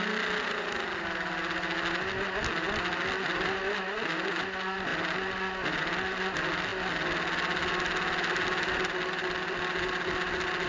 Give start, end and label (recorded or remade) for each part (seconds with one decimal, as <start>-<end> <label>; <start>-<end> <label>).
0.0-10.7 recorded